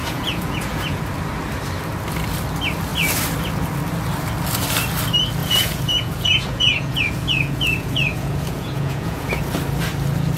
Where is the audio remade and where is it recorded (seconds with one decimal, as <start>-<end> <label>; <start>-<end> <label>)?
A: 0.0-1.0 remade; 1.0-5.4 recorded; 5.4-9.4 remade; 9.4-10.4 recorded